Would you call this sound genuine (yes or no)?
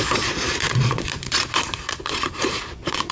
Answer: no